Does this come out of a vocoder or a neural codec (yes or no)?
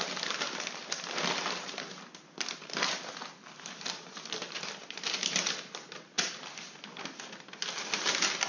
no